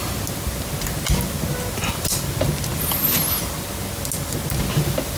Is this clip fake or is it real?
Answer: real